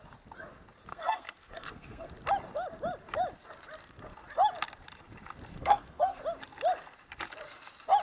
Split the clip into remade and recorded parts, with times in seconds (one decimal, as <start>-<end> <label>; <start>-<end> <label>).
0.0-0.9 recorded; 0.9-2.1 remade; 2.1-5.5 recorded; 5.5-6.2 remade; 6.2-8.0 recorded